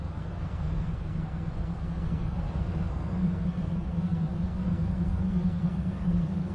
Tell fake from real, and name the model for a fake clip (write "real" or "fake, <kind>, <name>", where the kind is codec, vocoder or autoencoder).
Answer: fake, codec, SNAC